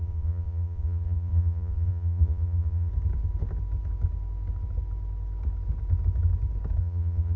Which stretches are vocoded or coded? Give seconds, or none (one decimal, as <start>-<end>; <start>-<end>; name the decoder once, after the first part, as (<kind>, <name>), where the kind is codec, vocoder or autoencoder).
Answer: 0.0-2.9 (vocoder, Vocos); 6.8-7.4